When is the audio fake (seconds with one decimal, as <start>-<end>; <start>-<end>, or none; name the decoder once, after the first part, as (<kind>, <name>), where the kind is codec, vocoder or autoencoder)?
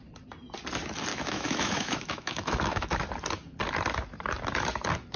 1.1-3.0 (autoencoder, DAC-VAE)